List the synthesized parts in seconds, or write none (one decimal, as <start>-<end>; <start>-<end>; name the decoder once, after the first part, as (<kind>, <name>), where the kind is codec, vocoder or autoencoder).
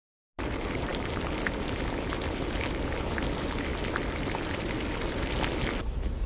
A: none